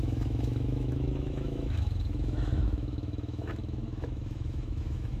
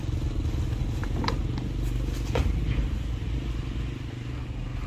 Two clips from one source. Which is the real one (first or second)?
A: second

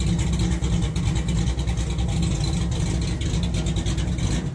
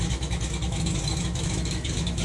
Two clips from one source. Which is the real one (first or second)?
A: first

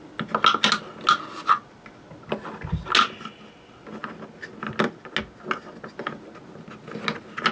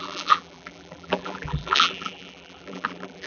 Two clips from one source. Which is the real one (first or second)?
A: first